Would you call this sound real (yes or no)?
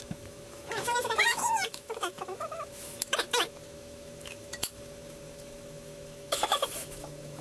no